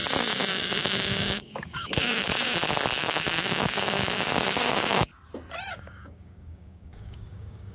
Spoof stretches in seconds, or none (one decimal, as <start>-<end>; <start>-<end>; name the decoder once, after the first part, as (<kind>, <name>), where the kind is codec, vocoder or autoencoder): 0.5-2.2 (codec, DAC); 3.0-5.1; 5.7-7.7

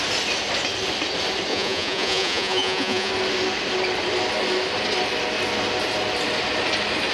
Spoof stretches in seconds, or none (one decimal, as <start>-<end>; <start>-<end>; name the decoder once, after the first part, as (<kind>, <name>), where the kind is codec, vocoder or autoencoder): 1.5-3.1 (vocoder, Vocos)

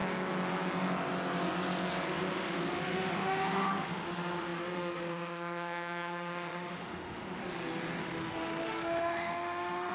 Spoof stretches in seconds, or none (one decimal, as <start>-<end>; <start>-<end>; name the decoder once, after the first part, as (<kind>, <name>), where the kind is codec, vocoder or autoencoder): 2.3-7.4 (autoencoder, DAC-VAE); 8.0-9.9

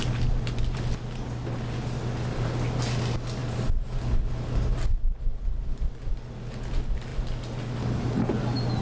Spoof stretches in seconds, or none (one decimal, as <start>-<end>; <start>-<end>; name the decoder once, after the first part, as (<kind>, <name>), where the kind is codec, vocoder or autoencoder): none

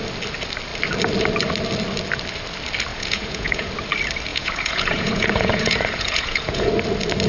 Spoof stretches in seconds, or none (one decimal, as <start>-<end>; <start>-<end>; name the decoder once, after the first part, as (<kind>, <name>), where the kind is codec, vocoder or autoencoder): 2.9-3.7 (vocoder, Vocos); 4.3-6.7